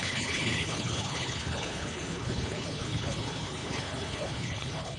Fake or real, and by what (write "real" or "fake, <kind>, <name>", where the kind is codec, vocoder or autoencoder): fake, codec, HILCodec